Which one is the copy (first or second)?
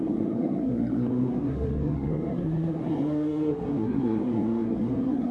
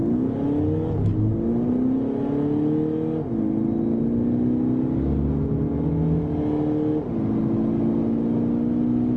first